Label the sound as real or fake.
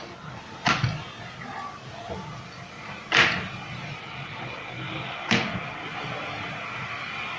real